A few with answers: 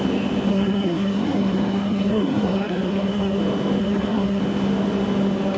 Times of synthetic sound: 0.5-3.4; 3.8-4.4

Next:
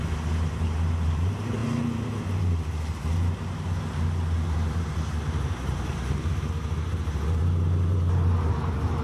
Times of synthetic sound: 0.0-1.6; 2.4-9.0

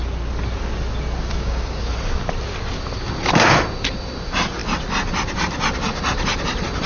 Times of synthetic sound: 1.3-1.8

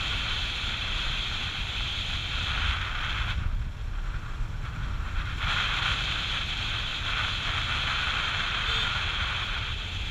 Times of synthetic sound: 0.0-2.2; 4.5-6.9; 7.8-10.1

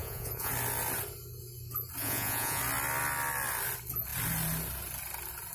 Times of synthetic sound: 0.0-0.5; 2.0-2.6

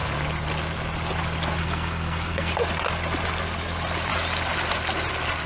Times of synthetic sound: 1.6-2.5